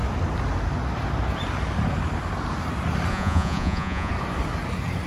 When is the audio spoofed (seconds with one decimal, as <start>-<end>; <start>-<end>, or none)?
3.1-4.1